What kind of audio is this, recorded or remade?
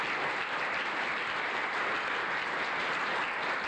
recorded